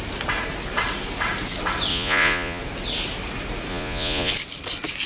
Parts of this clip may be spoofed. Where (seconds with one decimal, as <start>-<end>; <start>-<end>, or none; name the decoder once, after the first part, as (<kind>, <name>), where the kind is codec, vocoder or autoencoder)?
1.9-2.6 (vocoder, Vocos); 3.7-4.3